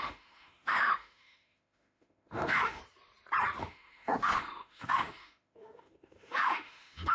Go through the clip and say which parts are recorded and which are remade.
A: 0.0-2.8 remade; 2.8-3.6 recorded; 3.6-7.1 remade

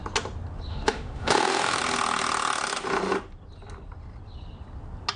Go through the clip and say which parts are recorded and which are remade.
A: 0.0-0.7 recorded; 0.7-1.8 remade; 1.8-5.2 recorded

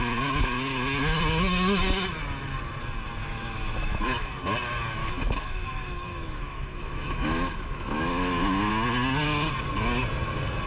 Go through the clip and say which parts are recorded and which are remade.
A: 0.0-3.2 recorded; 3.2-4.3 remade; 4.3-5.0 recorded; 5.0-8.7 remade; 8.7-10.7 recorded

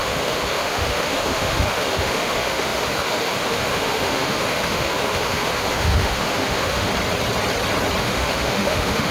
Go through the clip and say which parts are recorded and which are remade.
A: 0.0-6.9 remade; 6.9-8.0 recorded; 8.0-9.1 remade